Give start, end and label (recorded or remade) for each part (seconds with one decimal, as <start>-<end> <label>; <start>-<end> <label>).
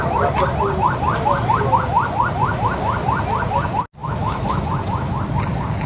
0.0-4.0 recorded; 4.0-4.6 remade; 4.6-5.9 recorded